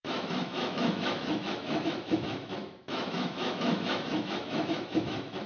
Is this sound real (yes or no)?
no